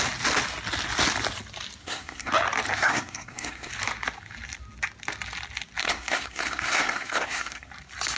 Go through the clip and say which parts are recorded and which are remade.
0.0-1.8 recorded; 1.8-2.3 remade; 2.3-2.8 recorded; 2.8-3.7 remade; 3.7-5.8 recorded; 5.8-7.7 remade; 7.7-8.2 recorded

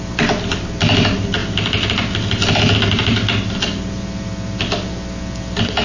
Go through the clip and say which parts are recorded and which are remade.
0.0-5.8 recorded

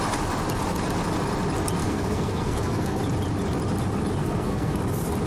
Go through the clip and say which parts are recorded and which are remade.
0.0-1.8 recorded; 1.8-3.0 remade; 3.0-4.2 recorded; 4.2-4.8 remade; 4.8-5.3 recorded

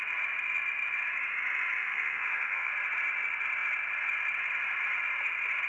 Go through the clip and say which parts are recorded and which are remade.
0.0-1.8 recorded; 1.8-2.7 remade; 2.7-5.7 recorded